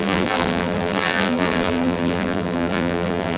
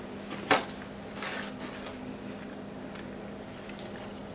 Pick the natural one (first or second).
second